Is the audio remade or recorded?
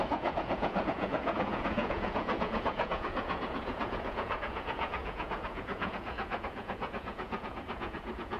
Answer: remade